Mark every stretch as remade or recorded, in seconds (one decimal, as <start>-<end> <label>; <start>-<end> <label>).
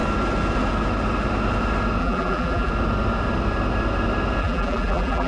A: 0.0-2.0 recorded; 2.0-2.7 remade; 2.7-4.4 recorded; 4.4-5.3 remade